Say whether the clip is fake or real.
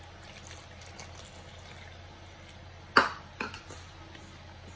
real